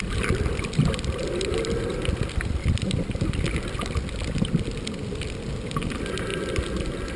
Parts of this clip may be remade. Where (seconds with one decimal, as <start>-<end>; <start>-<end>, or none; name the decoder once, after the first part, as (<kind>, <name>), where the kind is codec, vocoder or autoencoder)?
none